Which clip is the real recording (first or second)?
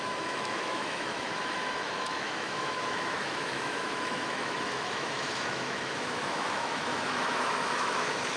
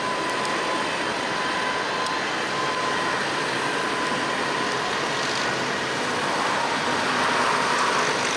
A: second